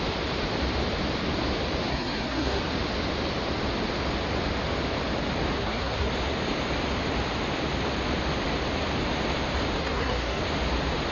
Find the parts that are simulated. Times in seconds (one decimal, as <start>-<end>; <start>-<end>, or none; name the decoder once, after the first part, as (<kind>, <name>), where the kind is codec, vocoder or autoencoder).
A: 1.9-2.6 (codec, SNAC); 5.6-6.1; 9.8-10.4